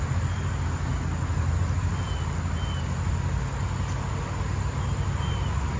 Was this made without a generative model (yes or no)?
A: yes